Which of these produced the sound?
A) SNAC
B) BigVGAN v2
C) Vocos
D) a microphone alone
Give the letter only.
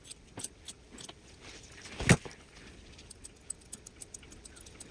D